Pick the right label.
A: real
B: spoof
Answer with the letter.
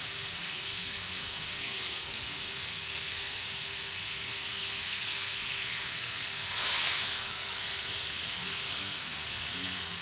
B